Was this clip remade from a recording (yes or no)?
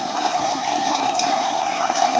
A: yes